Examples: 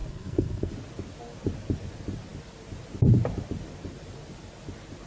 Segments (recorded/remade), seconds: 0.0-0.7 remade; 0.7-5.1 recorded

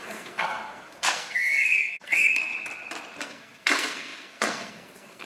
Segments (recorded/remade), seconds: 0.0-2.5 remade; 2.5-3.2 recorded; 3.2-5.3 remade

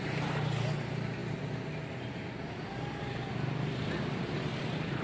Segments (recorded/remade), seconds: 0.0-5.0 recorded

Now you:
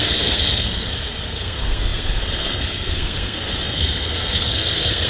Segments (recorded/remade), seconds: 0.0-5.1 remade